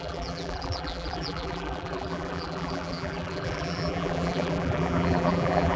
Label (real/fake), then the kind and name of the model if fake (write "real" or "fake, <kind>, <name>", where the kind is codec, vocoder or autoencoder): fake, vocoder, BigVGAN v2